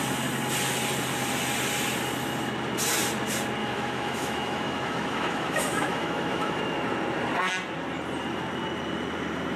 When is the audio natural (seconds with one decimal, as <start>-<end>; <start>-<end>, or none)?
0.0-3.6; 6.6-9.6